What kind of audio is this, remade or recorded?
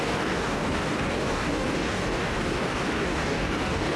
remade